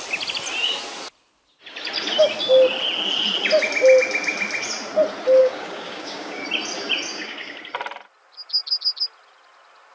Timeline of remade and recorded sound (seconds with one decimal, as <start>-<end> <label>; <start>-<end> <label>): 0.0-5.4 recorded; 5.4-6.4 remade; 6.4-7.1 recorded; 7.1-7.6 remade; 7.6-9.9 recorded